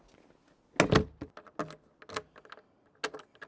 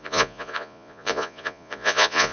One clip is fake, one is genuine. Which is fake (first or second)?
second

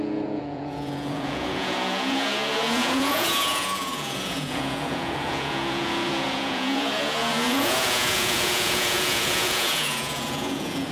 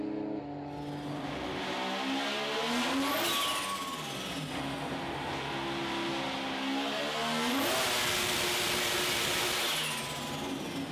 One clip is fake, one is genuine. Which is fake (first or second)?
first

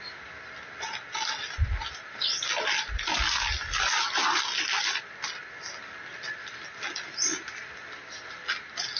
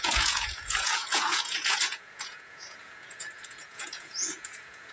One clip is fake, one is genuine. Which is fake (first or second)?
second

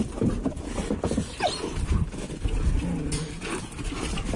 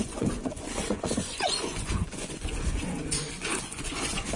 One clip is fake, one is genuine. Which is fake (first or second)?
second